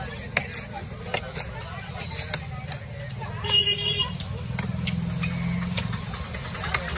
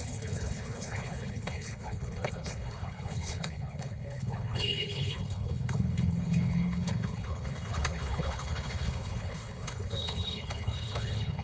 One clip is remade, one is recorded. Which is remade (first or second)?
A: second